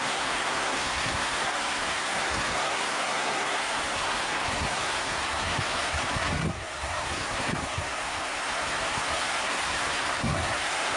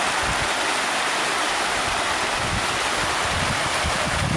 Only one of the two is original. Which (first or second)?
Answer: second